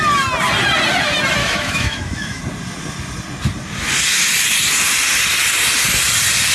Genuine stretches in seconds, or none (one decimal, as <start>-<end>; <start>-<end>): 0.0-1.4; 2.4-6.5